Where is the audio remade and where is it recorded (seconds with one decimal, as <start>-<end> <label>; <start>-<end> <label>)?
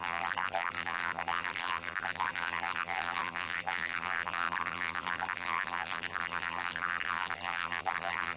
0.0-8.4 remade